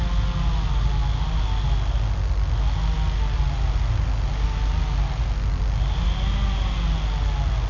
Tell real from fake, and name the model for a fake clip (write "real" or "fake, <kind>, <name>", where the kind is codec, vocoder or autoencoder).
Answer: real